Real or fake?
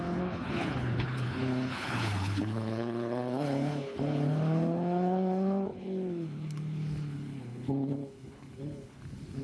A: fake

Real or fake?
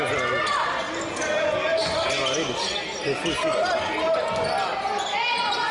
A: real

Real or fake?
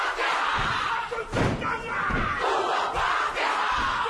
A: fake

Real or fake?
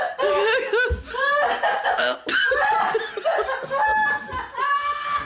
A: real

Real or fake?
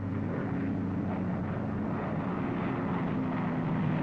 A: real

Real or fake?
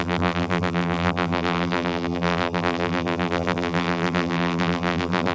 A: fake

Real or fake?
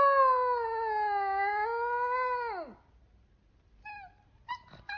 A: real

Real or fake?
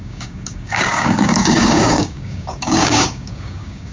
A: fake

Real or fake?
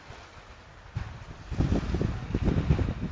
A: real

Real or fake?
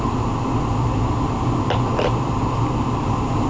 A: real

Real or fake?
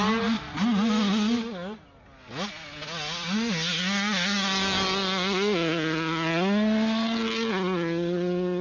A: real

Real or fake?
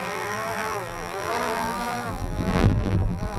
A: fake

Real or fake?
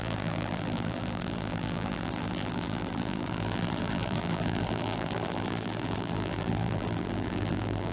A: fake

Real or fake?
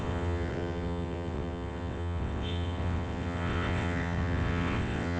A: fake